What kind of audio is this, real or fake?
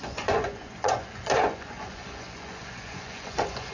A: fake